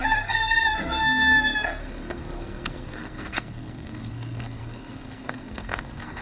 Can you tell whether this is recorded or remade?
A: remade